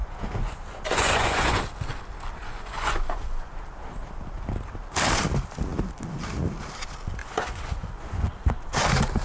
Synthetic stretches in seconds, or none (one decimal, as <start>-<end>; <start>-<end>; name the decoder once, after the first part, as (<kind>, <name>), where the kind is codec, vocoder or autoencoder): 0.0-1.6 (vocoder, Vocos); 2.4-3.5; 7.2-8.3